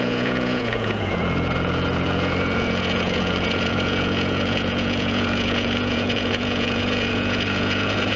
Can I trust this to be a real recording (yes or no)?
no